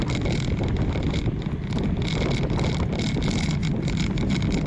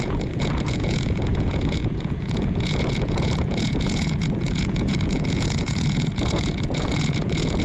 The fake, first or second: second